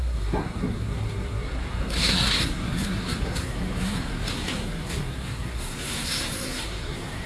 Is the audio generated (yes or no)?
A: yes